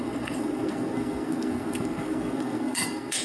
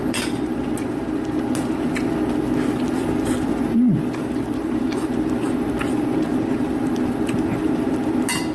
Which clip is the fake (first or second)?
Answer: first